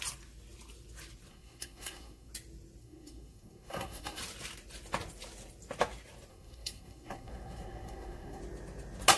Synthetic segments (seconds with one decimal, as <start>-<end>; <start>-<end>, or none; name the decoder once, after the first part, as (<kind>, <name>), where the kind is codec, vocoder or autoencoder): 1.3-2.3 (codec, SNAC); 2.8-4.2; 6.3-8.4